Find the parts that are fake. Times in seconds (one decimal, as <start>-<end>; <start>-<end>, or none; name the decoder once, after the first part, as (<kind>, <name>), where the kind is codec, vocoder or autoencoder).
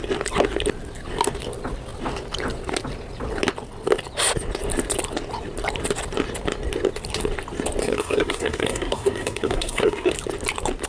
7.8-10.1 (codec, SNAC)